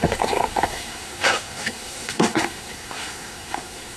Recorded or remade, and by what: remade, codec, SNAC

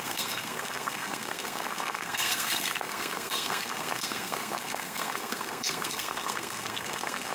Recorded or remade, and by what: remade, codec, SNAC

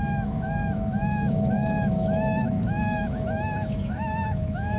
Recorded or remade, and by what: remade, autoencoder, DAC-VAE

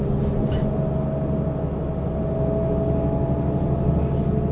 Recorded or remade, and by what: recorded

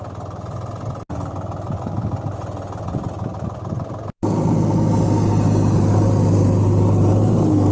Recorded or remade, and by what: recorded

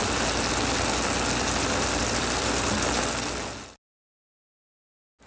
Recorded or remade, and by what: recorded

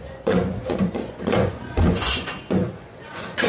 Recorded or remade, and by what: remade, vocoder, Vocos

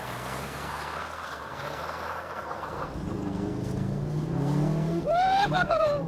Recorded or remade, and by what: remade, codec, SNAC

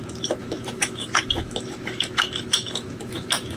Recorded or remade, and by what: remade, autoencoder, DAC-VAE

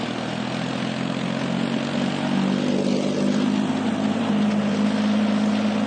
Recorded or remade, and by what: recorded